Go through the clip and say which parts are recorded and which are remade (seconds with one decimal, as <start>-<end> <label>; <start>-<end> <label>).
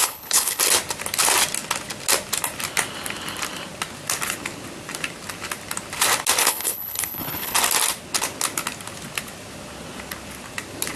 0.0-0.6 remade; 0.6-6.4 recorded; 6.4-7.6 remade; 7.6-11.0 recorded